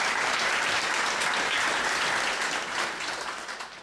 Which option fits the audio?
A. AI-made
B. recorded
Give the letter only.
B